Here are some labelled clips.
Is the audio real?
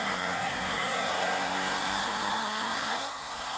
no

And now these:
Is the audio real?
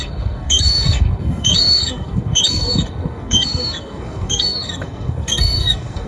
no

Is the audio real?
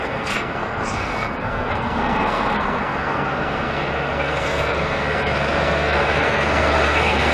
no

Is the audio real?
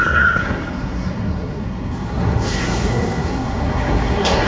no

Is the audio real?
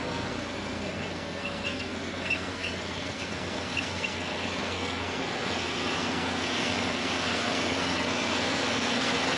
no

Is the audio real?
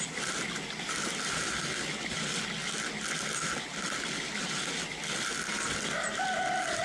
yes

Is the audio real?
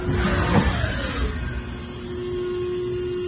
yes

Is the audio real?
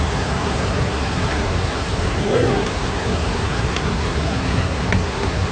no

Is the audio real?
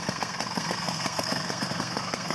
no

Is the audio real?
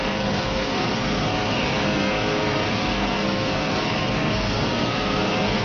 no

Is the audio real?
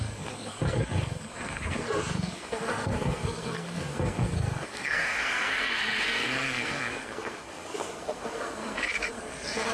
no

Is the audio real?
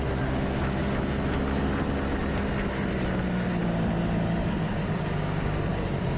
yes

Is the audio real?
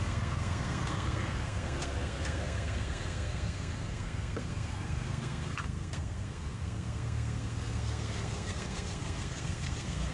no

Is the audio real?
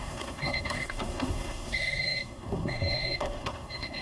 no